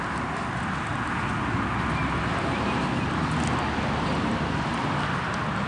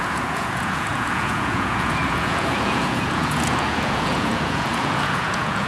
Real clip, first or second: first